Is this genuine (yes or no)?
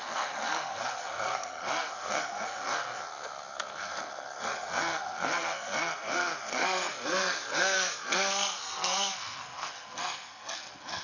no